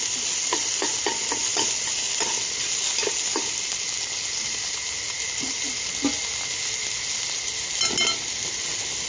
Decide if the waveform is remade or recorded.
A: recorded